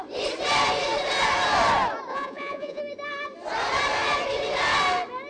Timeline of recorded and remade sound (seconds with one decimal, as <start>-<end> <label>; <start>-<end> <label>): 0.0-2.1 recorded; 2.1-2.8 remade; 2.8-5.3 recorded